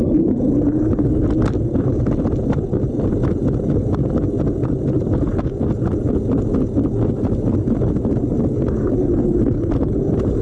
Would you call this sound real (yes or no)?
yes